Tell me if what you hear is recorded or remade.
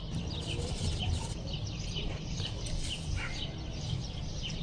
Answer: remade